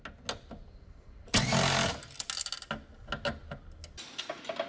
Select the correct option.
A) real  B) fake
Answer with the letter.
A